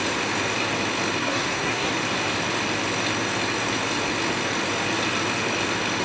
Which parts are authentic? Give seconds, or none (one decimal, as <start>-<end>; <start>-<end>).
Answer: 0.0-1.2; 1.9-6.0